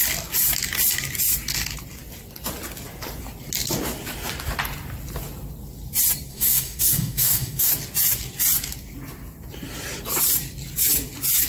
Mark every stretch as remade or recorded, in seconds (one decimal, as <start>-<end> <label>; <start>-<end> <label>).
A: 0.0-6.3 recorded; 6.3-7.7 remade; 7.7-11.5 recorded